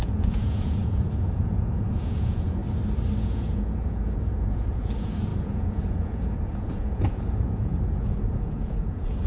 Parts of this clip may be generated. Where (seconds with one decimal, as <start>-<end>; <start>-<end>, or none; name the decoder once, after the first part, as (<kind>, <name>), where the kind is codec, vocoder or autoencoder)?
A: 0.0-2.6 (vocoder, Vocos); 3.2-9.3